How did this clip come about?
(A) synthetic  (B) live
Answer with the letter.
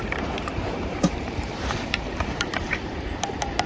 A